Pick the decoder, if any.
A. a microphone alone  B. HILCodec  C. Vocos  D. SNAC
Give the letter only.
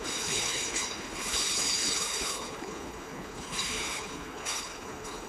B